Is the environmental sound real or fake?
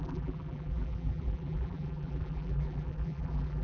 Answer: fake